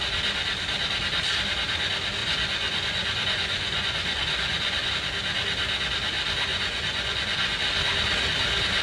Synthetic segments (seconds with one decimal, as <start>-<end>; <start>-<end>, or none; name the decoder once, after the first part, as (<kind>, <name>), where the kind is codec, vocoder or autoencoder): 2.2-4.9 (vocoder, Vocos); 6.5-7.5